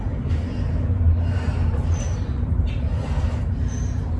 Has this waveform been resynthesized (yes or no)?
yes